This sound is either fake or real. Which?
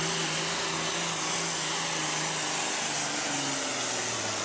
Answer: real